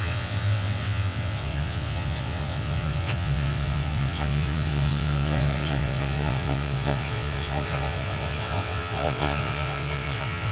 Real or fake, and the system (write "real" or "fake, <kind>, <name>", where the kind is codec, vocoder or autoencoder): fake, vocoder, WaveNeXt